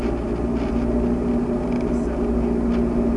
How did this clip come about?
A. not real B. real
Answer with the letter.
B